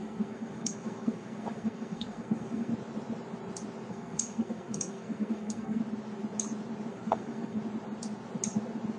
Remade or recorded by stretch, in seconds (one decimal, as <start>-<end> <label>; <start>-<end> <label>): 0.0-2.7 remade; 2.7-3.9 recorded; 3.9-5.8 remade; 5.8-6.9 recorded; 6.9-7.6 remade; 7.6-9.0 recorded

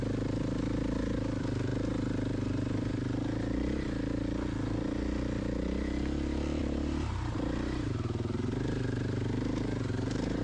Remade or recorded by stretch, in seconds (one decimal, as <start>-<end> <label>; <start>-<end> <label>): 0.0-6.6 recorded; 6.6-10.4 remade

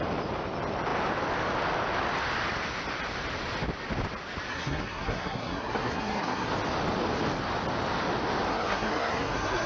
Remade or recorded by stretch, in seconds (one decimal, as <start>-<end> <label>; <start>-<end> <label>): 0.0-4.5 recorded; 4.5-6.5 remade; 6.5-8.5 recorded; 8.5-9.7 remade

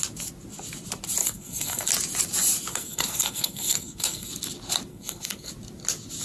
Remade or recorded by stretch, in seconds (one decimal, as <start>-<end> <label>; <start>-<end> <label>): 0.0-1.2 recorded; 1.2-1.9 remade; 1.9-2.7 recorded; 2.7-4.3 remade; 4.3-4.9 recorded; 4.9-5.5 remade; 5.5-6.2 recorded

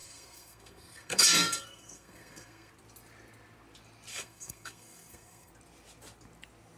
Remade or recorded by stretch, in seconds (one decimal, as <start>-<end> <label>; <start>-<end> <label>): 0.0-2.7 remade; 2.7-4.1 recorded; 4.1-5.5 remade; 5.5-6.8 recorded